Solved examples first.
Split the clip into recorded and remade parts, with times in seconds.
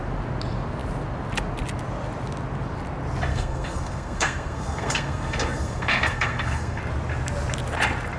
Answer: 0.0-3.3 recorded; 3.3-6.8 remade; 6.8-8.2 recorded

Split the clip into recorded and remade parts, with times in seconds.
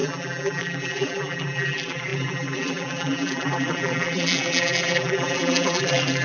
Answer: 0.0-6.2 remade